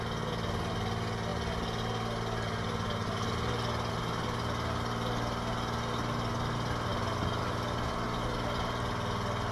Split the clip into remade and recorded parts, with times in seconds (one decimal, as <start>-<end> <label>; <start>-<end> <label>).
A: 0.0-9.5 recorded